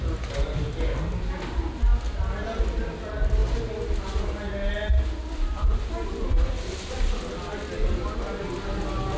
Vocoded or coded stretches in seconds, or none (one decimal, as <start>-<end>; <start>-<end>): none